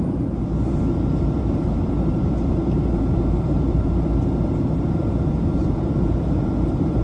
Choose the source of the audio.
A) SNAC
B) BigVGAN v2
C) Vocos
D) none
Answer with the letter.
B